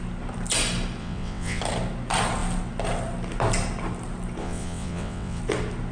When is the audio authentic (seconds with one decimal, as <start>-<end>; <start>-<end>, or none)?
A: 0.0-1.0; 1.6-4.4; 5.4-5.9